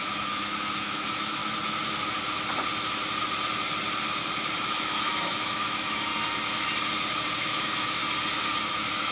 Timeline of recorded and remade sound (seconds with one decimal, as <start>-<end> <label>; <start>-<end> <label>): 0.0-1.4 remade; 1.4-4.6 recorded; 4.6-6.1 remade; 6.1-7.4 recorded; 7.4-8.0 remade; 8.0-8.7 recorded; 8.7-9.1 remade